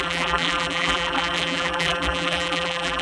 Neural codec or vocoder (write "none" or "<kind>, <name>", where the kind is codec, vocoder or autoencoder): vocoder, BigVGAN v2